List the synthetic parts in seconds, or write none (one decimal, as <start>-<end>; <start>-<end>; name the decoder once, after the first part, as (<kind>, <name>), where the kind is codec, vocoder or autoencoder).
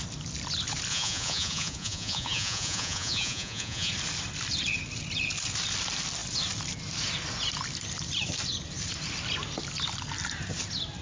0.9-3.9 (vocoder, Vocos)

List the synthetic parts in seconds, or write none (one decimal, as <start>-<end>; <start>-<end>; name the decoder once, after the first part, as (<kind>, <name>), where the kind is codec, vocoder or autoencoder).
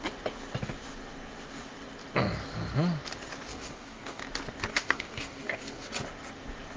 3.5-4.2 (codec, DAC); 4.7-5.9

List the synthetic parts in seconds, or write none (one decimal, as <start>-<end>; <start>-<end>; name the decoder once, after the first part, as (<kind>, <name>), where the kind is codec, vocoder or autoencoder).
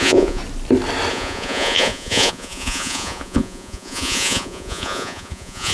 0.0-0.4 (vocoder, Vocos); 1.1-5.7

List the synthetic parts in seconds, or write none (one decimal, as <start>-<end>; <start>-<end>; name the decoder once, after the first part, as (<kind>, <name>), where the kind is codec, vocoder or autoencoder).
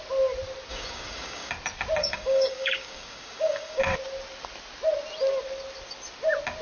0.7-1.5 (codec, DAC); 2.0-3.8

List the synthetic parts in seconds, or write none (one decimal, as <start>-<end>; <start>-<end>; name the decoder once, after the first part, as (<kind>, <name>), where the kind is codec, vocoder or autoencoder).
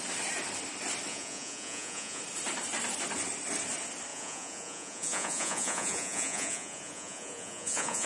1.1-2.2 (vocoder, Vocos); 4.1-8.1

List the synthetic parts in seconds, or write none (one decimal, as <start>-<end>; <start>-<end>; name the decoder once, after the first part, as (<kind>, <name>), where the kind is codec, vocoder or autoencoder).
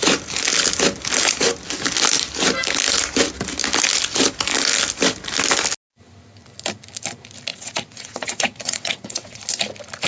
7.5-9.4 (vocoder, WaveNeXt)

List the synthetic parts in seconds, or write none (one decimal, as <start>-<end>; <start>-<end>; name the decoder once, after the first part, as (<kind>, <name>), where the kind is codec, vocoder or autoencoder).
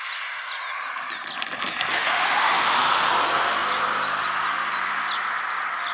1.9-3.1 (autoencoder, DAC-VAE)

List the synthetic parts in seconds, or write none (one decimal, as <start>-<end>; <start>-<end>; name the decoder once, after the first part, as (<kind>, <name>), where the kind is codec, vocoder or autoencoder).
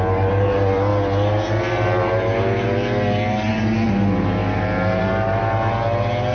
none